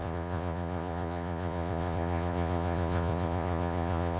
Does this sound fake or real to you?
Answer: fake